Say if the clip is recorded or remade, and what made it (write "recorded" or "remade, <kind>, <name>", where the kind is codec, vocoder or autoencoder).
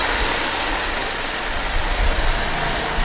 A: remade, vocoder, BigVGAN v2